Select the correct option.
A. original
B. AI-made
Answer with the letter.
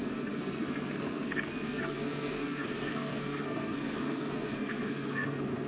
B